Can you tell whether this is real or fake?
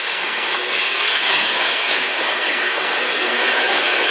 fake